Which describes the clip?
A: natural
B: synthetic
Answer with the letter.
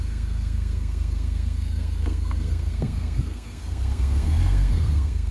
B